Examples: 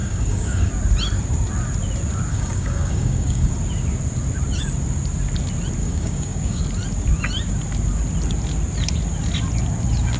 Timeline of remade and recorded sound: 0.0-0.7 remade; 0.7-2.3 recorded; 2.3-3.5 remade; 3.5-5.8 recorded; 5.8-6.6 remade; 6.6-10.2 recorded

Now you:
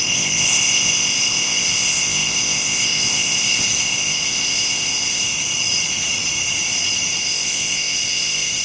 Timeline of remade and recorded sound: 0.0-5.3 remade; 5.3-7.2 recorded; 7.2-8.6 remade

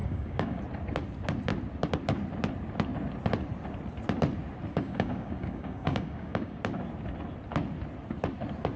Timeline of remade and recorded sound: 0.0-0.6 remade; 0.6-4.7 recorded; 4.7-6.6 remade; 6.6-8.8 recorded

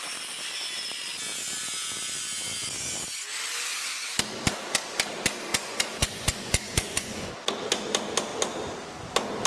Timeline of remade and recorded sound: 0.0-5.5 recorded; 5.5-7.3 remade; 7.3-9.5 recorded